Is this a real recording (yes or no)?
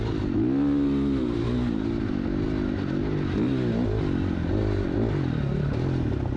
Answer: yes